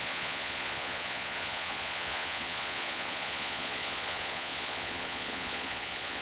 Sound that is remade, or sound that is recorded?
remade